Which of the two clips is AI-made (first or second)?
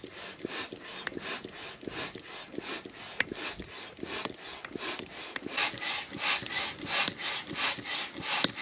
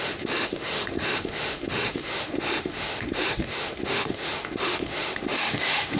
second